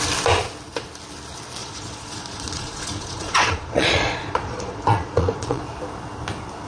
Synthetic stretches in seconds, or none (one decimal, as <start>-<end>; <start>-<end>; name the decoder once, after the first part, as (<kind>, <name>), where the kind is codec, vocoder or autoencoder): 1.6-5.6 (vocoder, Vocos)